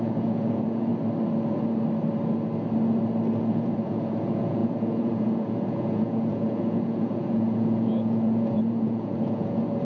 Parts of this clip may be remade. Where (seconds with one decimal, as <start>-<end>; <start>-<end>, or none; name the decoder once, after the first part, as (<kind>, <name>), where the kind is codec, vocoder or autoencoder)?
0.0-0.9 (vocoder, Vocos); 3.4-9.8